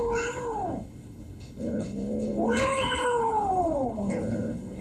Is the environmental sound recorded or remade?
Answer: remade